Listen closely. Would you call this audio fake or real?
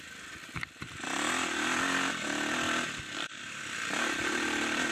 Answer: real